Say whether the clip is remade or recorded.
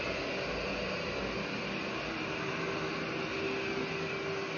recorded